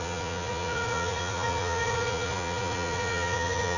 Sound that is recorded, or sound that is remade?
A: remade